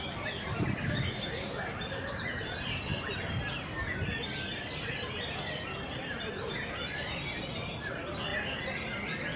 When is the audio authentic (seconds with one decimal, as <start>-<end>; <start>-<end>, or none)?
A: 0.0-9.4